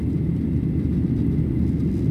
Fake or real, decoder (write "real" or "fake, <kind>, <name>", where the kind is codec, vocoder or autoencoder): fake, vocoder, BigVGAN v2